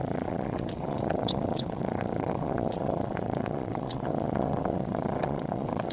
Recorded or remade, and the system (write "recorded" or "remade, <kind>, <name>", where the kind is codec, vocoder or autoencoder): remade, vocoder, WaveNeXt